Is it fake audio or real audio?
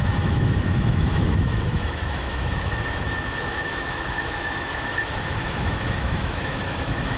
fake